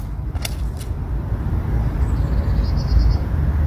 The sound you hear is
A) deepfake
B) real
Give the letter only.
B